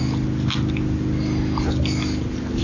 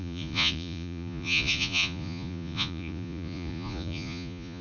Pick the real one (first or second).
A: first